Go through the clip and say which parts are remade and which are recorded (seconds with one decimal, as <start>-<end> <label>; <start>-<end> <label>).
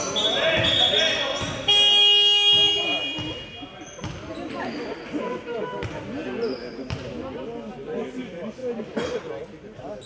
0.0-10.1 recorded